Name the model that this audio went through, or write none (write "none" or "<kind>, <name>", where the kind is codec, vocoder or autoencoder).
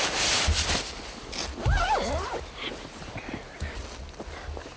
none